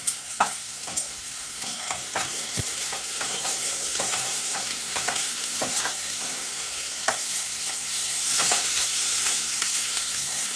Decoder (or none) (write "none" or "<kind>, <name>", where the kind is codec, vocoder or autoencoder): codec, SNAC